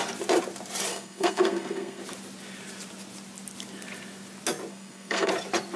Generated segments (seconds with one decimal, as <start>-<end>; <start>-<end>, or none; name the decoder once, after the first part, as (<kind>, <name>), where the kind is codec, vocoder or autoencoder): 0.9-2.0 (codec, SNAC); 4.7-5.3